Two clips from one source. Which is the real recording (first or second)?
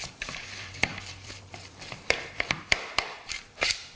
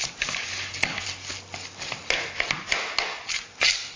second